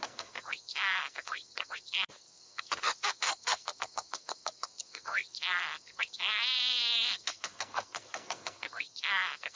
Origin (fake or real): fake